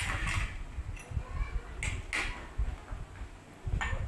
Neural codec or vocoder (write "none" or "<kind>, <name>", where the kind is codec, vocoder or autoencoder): none